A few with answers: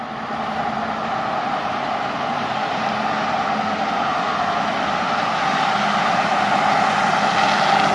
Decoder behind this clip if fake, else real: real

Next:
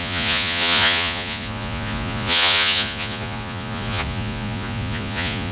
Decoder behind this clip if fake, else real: fake, vocoder, Vocos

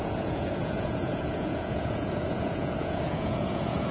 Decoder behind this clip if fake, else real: fake, vocoder, Vocos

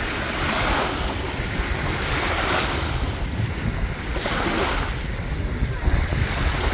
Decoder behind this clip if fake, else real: real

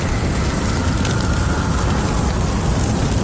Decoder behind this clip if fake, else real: real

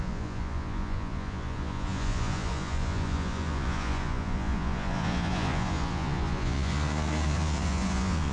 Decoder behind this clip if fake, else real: fake, vocoder, Vocos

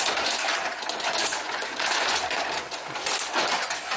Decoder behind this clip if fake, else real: fake, vocoder, Vocos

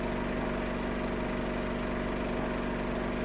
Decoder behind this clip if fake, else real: real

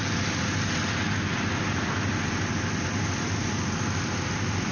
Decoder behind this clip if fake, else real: real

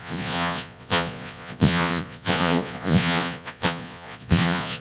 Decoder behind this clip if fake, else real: fake, vocoder, Vocos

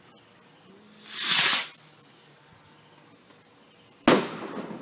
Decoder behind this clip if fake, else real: real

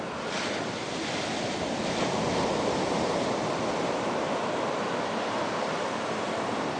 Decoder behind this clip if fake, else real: real